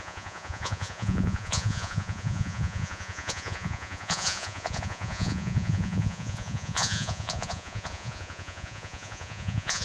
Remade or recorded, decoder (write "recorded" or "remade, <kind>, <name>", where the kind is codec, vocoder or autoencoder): remade, vocoder, Vocos